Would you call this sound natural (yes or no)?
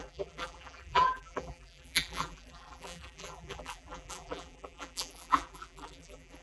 no